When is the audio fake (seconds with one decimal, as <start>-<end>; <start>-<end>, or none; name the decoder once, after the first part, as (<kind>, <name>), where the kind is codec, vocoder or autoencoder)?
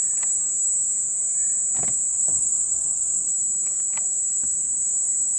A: 2.1-3.3 (codec, SNAC)